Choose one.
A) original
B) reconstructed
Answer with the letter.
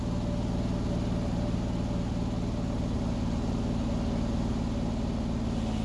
A